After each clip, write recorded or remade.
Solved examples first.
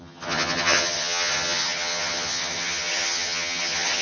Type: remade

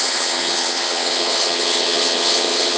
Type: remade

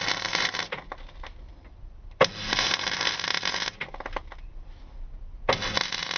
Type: recorded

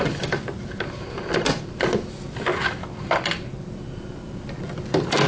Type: recorded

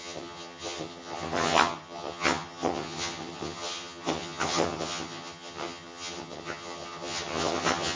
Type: remade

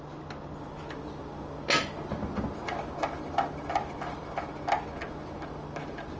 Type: recorded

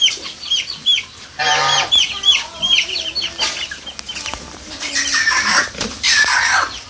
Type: recorded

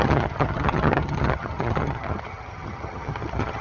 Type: remade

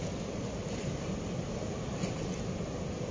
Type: recorded